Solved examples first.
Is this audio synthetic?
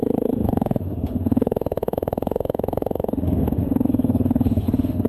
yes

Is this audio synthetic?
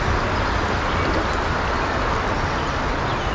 no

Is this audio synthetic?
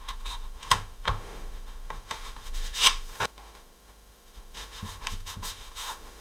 yes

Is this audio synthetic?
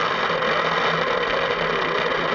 no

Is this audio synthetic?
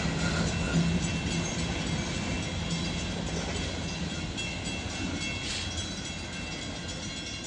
no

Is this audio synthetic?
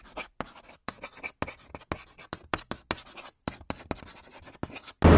no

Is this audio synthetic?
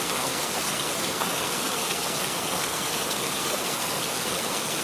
yes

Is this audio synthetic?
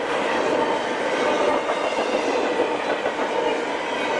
no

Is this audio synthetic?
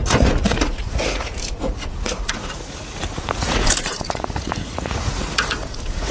yes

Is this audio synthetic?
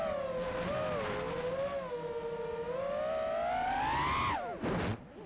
no